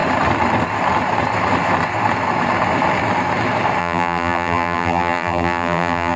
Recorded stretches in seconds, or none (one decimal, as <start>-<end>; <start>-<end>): 0.0-3.8